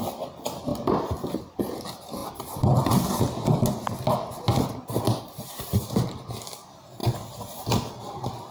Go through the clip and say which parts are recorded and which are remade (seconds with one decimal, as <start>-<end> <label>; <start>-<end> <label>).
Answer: 0.0-8.5 recorded